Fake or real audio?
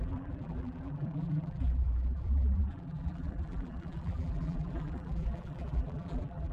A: fake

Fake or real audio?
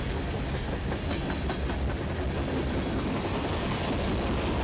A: real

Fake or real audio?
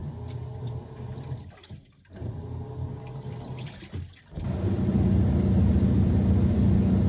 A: real